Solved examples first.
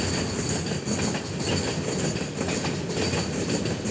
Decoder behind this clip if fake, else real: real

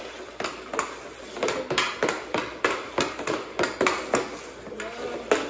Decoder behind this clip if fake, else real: real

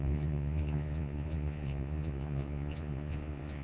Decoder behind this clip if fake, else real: fake, vocoder, Vocos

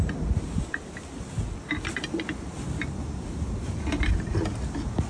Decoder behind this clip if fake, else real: real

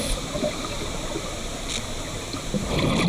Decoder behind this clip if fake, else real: real